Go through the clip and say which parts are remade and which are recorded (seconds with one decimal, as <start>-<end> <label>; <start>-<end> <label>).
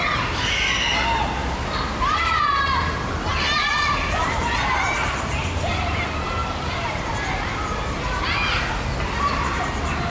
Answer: 0.0-1.4 recorded; 1.4-2.6 remade; 2.6-3.3 recorded; 3.3-4.4 remade; 4.4-6.4 recorded; 6.4-7.1 remade; 7.1-10.1 recorded